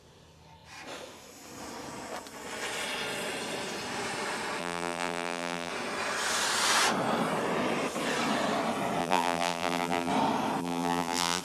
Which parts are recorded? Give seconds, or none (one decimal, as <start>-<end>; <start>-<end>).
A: 0.0-4.6; 5.7-9.0; 10.1-10.6